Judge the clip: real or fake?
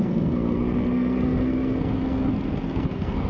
fake